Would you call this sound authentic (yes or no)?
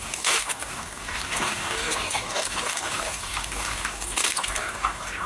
no